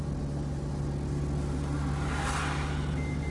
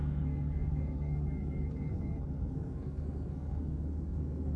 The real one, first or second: first